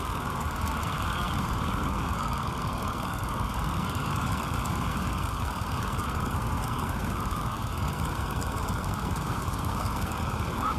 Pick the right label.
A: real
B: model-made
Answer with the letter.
B